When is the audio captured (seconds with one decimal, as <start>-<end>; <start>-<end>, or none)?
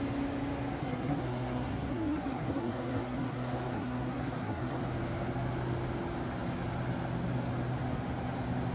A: 0.0-0.8; 4.8-8.7